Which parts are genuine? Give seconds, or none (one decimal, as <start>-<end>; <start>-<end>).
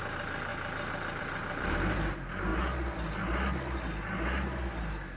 0.0-5.2